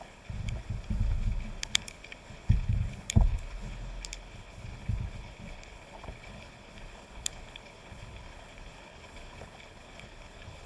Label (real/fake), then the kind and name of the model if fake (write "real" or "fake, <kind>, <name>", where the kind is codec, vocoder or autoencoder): fake, codec, HILCodec